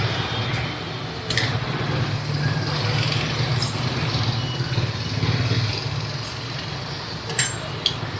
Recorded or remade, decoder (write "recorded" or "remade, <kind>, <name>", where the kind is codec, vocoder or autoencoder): recorded